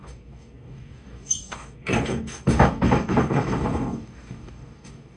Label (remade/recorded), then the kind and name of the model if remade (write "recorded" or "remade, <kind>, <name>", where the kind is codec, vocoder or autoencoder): remade, codec, DAC